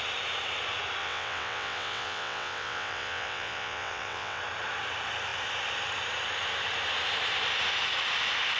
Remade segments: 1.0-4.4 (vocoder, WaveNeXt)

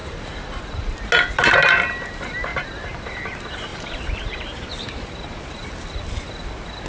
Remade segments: 0.0-0.6 (vocoder, BigVGAN v2); 2.5-3.2; 3.7-5.7

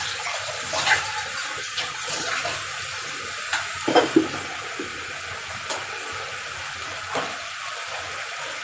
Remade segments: 1.6-2.4 (vocoder, HiFi-GAN)

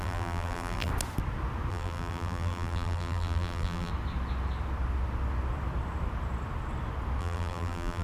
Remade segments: 0.0-0.9 (vocoder, BigVGAN v2); 1.7-3.9; 7.2-8.0

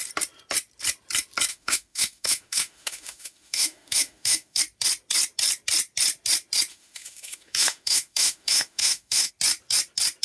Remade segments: 1.5-4.6 (autoencoder, DAC-VAE); 6.7-9.3

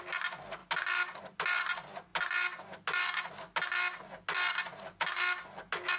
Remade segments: none

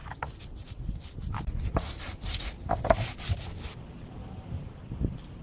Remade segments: 4.2-4.9 (vocoder, BigVGAN v2)

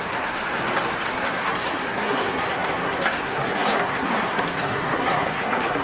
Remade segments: 0.0-0.6 (codec, SNAC); 1.1-5.8